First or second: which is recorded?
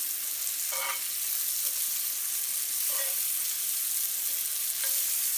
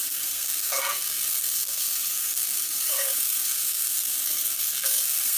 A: first